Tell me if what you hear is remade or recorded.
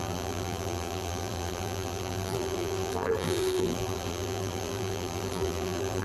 remade